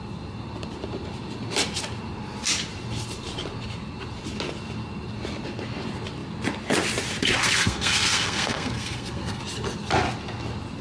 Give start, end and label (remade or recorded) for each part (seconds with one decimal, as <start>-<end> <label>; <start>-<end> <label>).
0.0-7.4 recorded; 7.4-9.4 remade; 9.4-10.8 recorded